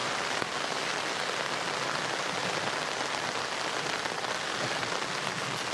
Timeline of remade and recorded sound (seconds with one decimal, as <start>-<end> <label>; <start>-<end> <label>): 0.0-5.7 recorded